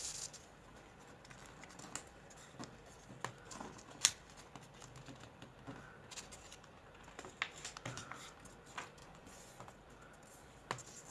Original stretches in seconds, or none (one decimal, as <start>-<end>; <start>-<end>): 0.0-9.0; 9.6-11.1